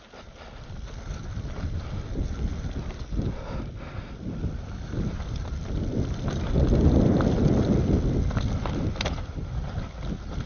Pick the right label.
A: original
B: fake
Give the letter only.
A